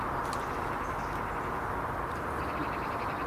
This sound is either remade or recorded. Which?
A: recorded